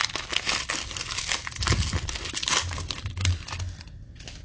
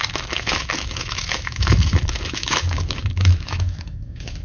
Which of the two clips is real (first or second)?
first